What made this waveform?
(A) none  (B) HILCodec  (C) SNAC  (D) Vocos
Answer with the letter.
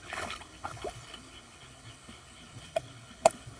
B